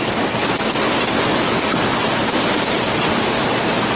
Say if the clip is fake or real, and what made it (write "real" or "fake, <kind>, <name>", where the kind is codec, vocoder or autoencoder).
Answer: real